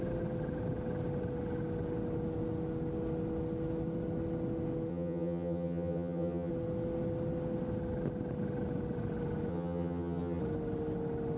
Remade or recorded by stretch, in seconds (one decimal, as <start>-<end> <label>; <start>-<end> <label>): 0.0-4.9 recorded; 4.9-6.5 remade; 6.5-9.5 recorded; 9.5-10.4 remade; 10.4-11.4 recorded